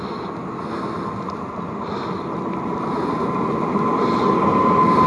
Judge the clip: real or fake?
real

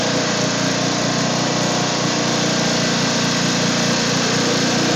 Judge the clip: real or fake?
real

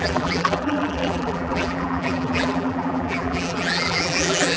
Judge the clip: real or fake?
fake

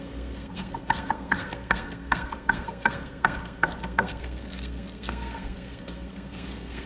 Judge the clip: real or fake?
fake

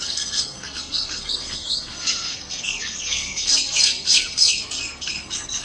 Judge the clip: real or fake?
fake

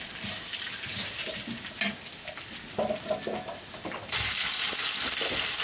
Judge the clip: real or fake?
real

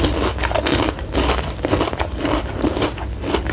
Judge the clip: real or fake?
real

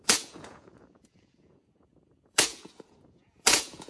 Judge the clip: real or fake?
fake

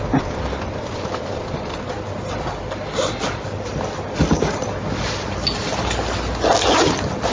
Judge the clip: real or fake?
real